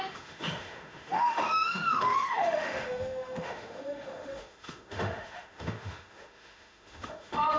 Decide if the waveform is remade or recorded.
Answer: remade